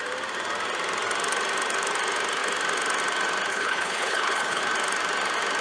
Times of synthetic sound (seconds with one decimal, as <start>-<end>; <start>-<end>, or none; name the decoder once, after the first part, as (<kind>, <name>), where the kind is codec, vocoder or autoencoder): 3.5-4.6 (codec, HILCodec)